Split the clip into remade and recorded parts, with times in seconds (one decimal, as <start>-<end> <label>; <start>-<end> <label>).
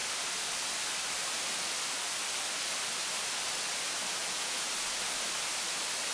0.0-4.2 recorded; 4.2-4.7 remade; 4.7-6.1 recorded